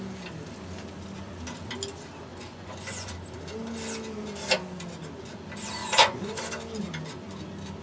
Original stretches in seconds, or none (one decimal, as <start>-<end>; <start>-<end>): 0.0-2.3; 3.1-5.8; 6.4-7.8